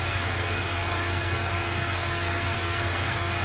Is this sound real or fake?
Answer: fake